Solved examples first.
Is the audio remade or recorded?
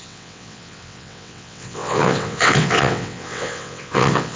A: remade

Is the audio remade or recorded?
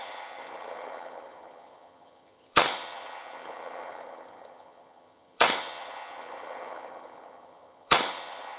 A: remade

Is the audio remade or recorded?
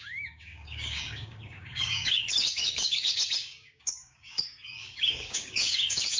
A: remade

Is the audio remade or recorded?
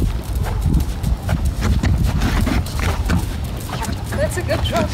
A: recorded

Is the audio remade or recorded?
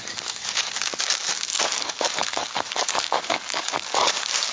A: remade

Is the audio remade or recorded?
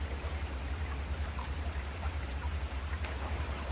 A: remade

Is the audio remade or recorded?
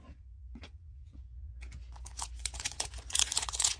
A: remade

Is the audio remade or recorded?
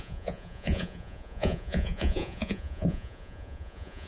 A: remade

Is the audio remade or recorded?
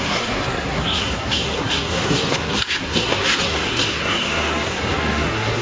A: remade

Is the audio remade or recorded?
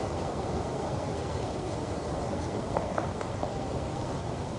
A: remade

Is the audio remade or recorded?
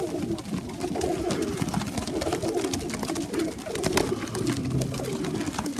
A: recorded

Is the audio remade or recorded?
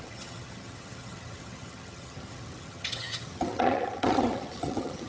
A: remade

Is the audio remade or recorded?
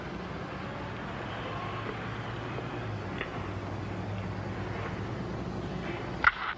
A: recorded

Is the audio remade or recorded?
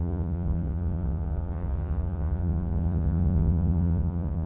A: remade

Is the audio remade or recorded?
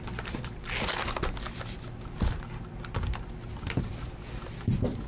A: recorded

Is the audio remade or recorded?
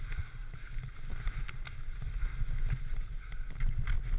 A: recorded